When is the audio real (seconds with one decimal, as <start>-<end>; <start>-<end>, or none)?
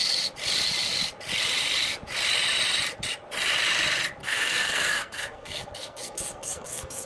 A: 0.0-4.2